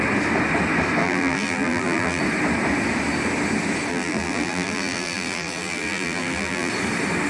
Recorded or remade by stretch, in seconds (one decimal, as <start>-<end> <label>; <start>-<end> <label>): 0.0-1.0 recorded; 1.0-2.2 remade; 2.2-3.9 recorded; 3.9-6.7 remade; 6.7-7.3 recorded